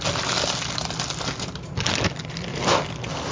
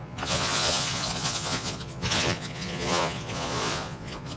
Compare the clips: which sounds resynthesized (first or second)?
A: second